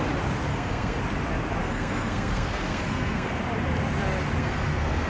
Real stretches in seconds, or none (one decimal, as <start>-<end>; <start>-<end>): 0.0-0.5; 1.0-1.6; 3.4-4.4